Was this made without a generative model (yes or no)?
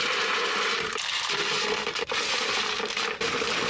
no